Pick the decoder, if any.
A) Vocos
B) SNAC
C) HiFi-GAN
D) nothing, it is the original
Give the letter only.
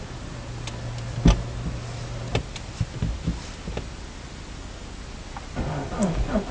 D